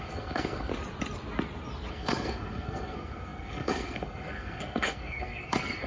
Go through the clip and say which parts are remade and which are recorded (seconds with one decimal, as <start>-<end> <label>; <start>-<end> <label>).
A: 0.0-0.7 remade; 0.7-1.9 recorded; 1.9-5.9 remade